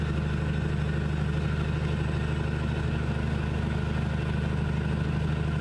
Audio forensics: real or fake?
real